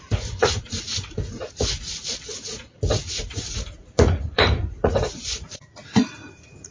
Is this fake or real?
fake